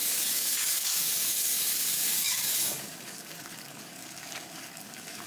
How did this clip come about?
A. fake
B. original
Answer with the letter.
A